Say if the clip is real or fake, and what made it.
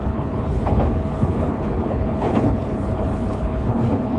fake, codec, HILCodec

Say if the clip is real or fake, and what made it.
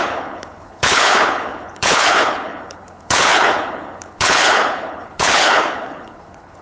fake, codec, HILCodec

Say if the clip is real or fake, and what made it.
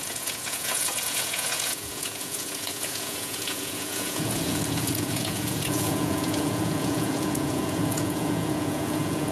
fake, vocoder, Vocos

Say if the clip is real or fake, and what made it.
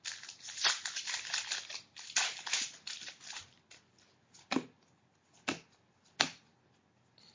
real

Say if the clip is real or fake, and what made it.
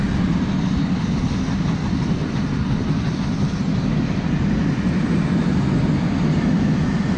real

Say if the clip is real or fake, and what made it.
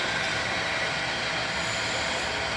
fake, vocoder, BigVGAN v2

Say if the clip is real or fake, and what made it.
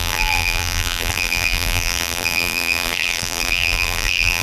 fake, vocoder, BigVGAN v2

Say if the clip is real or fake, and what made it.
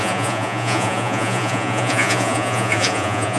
fake, vocoder, Vocos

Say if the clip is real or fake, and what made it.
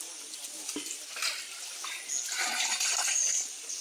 real